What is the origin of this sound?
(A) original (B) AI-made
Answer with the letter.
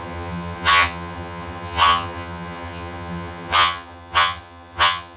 B